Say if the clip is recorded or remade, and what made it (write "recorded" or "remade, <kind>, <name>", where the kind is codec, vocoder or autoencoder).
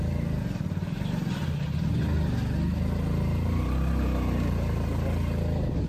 recorded